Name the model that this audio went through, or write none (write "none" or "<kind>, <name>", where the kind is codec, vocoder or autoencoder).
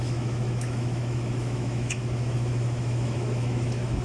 autoencoder, DAC-VAE